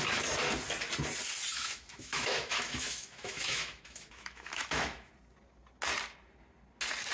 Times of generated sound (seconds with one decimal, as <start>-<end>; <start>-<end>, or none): 1.5-5.1